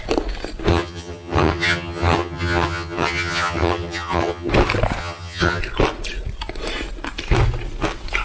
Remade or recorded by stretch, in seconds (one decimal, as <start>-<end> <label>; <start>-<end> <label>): 0.0-0.7 recorded; 0.7-4.5 remade; 4.5-5.0 recorded; 5.0-5.6 remade; 5.6-8.2 recorded